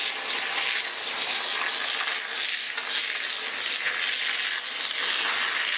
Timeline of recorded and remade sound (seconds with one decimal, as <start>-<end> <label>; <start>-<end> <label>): 0.0-5.8 recorded